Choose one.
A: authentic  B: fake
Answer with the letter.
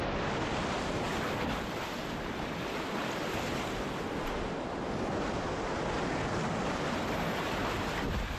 A